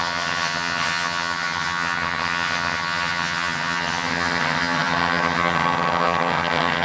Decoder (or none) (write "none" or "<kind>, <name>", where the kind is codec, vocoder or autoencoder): vocoder, HiFi-GAN